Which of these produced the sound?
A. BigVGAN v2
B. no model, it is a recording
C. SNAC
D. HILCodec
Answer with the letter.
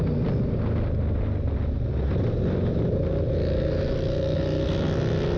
B